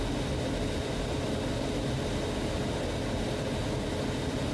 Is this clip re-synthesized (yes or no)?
no